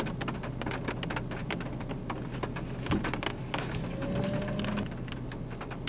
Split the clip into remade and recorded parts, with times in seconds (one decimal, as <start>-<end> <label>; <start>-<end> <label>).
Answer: 0.0-1.4 recorded; 1.4-2.0 remade; 2.0-5.9 recorded